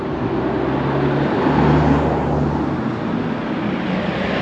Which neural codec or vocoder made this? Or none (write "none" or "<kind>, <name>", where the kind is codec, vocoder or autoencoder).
none